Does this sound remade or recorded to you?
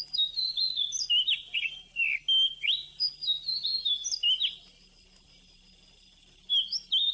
recorded